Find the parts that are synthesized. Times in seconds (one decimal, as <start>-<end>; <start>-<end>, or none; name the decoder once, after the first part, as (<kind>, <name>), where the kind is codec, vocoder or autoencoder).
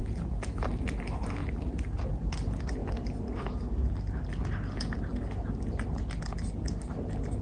none